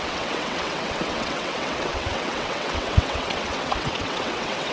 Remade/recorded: remade